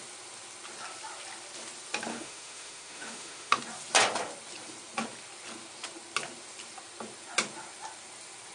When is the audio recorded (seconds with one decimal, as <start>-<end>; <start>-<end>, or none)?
0.0-2.1; 3.6-8.5